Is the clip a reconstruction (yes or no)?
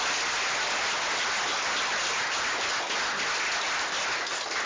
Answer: no